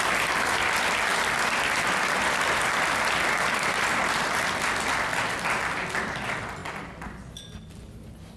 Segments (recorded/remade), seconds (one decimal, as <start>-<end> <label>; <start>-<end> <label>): 0.0-8.4 recorded